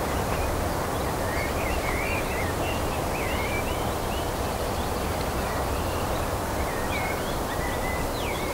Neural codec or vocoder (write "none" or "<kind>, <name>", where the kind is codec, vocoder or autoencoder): vocoder, BigVGAN v2